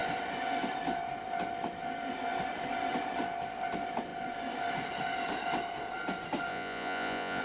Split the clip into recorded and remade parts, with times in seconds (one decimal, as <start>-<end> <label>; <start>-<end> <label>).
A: 0.0-6.5 recorded; 6.5-7.4 remade